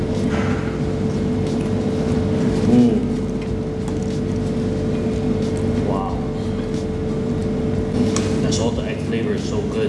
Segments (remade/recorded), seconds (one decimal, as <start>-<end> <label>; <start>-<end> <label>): 0.0-9.9 recorded